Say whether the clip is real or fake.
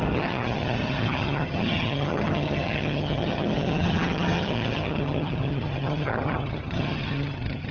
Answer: fake